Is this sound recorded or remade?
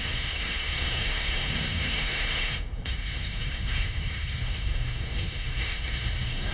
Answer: remade